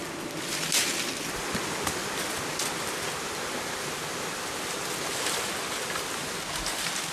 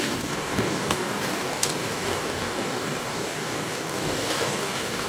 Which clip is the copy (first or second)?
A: second